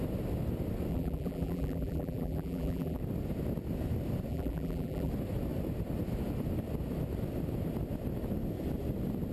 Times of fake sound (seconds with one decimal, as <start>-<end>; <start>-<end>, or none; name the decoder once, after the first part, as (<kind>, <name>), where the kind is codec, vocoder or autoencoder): 0.9-3.0 (vocoder, BigVGAN v2); 4.3-5.1